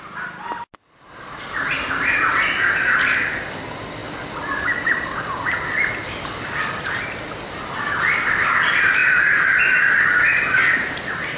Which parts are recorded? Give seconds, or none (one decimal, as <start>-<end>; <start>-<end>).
0.0-11.4